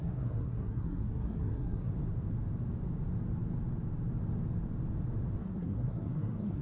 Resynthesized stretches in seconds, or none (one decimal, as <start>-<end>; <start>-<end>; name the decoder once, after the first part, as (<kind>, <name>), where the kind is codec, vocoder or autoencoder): 0.0-1.9 (codec, SNAC); 5.4-6.6